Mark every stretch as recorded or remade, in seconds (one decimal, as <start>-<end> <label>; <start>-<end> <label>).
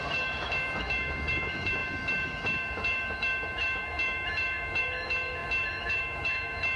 0.0-6.8 remade